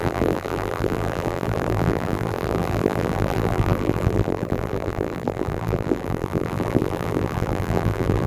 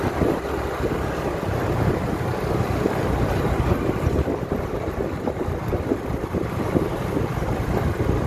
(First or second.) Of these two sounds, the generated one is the first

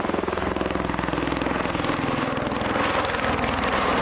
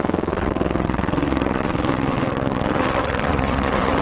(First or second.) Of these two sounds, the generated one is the second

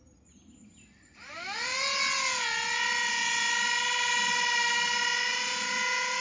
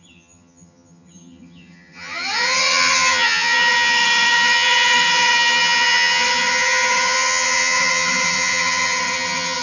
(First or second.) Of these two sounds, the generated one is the second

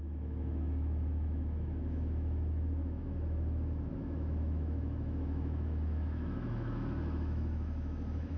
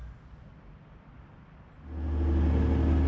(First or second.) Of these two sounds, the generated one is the first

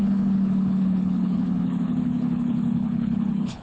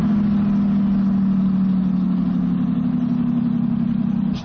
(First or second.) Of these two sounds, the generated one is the first